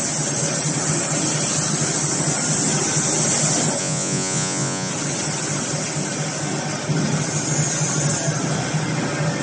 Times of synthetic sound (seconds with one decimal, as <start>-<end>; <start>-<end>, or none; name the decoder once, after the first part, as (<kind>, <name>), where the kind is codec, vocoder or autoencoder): 3.8-4.9 (vocoder, Vocos)